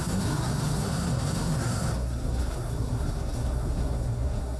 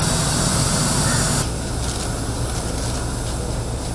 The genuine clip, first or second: second